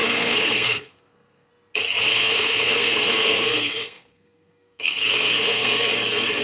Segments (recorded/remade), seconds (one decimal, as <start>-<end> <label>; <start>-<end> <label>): 0.0-1.5 remade; 1.5-2.1 recorded; 2.1-5.9 remade; 5.9-6.4 recorded